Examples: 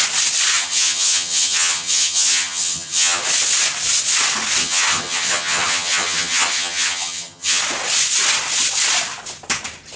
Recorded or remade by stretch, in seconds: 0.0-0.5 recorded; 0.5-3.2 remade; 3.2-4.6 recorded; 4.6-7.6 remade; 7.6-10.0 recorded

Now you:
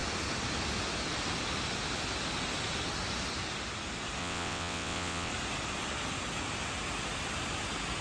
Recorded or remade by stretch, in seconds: 0.0-4.2 recorded; 4.2-5.3 remade; 5.3-8.0 recorded

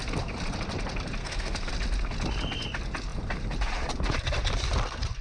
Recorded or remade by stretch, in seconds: 0.0-1.2 recorded; 1.2-1.7 remade; 1.7-5.2 recorded